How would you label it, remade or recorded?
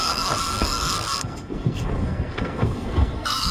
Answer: remade